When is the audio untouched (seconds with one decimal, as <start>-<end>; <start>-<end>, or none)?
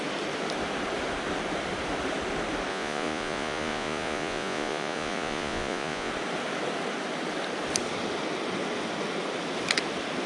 0.0-2.7; 6.1-10.3